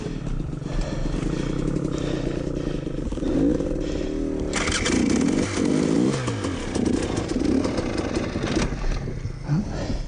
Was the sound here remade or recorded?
recorded